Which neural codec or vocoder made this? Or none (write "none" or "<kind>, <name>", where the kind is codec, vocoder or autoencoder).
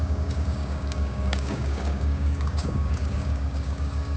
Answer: codec, DAC